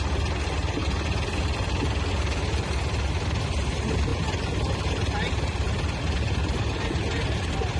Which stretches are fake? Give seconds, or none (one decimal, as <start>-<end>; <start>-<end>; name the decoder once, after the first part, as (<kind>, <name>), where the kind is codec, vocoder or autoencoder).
none